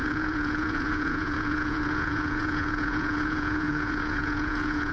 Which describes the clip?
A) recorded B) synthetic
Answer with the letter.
B